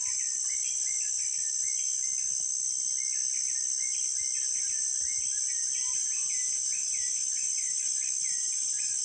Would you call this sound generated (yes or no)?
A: no